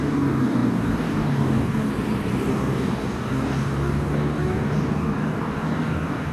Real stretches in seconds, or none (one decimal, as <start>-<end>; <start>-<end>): 1.9-2.5